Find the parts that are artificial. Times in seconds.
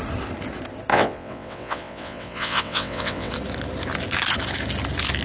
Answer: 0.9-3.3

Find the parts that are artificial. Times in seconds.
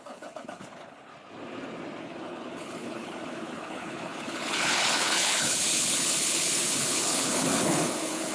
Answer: 0.0-1.1; 2.0-8.3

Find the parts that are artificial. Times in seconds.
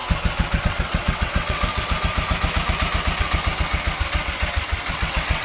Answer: 0.6-1.7; 4.9-5.4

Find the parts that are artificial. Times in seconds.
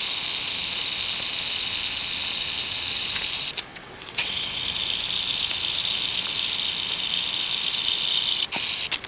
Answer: 3.7-4.6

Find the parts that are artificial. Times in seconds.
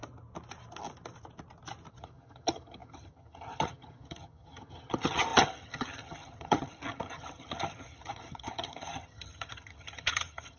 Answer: 1.9-10.6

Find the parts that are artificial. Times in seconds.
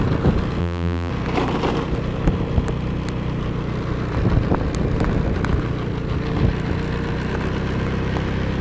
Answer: 0.6-1.1